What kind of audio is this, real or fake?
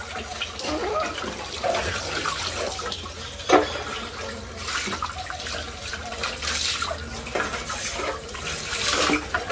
real